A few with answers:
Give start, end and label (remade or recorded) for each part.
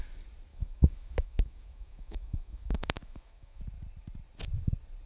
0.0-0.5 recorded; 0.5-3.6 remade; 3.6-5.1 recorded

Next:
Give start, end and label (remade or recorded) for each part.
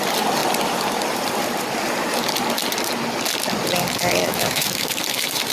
0.0-4.2 recorded; 4.2-5.0 remade; 5.0-5.5 recorded